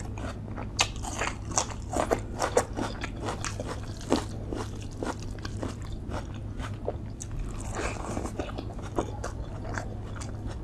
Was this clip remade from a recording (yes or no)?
no